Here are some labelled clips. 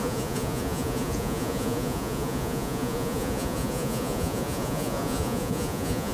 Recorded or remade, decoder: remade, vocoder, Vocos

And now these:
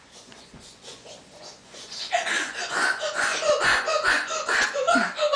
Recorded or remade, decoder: remade, vocoder, Vocos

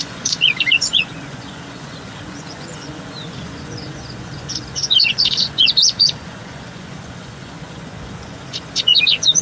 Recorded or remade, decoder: remade, vocoder, Vocos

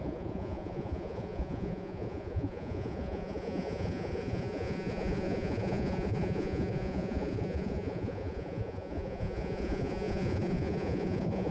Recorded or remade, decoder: remade, vocoder, Vocos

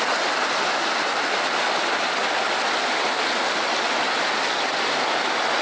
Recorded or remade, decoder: recorded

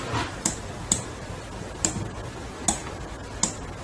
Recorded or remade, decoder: recorded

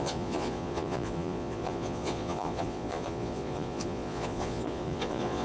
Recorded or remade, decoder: remade, vocoder, Vocos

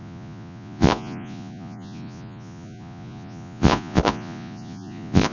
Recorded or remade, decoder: remade, vocoder, Vocos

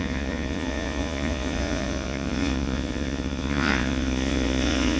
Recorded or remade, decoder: remade, vocoder, Vocos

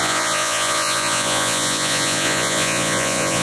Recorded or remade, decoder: remade, vocoder, Vocos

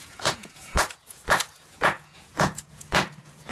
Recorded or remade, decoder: remade, vocoder, Vocos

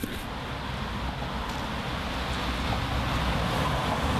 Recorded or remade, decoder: recorded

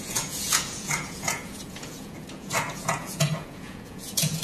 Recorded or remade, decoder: remade, vocoder, Vocos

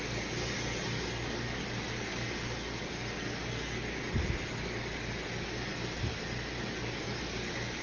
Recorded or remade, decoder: recorded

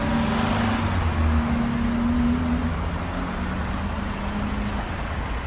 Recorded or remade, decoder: recorded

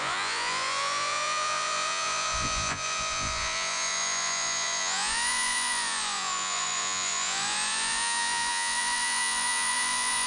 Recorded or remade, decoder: remade, vocoder, Vocos